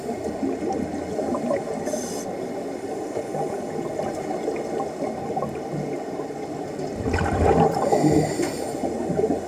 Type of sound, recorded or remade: recorded